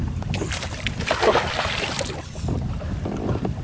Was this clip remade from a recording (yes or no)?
yes